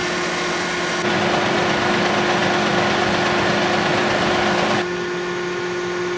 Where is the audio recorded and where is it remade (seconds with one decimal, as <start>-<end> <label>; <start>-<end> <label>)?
0.0-6.2 recorded